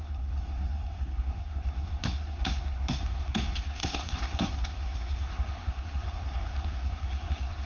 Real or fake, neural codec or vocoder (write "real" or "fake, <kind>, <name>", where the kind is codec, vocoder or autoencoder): fake, codec, SNAC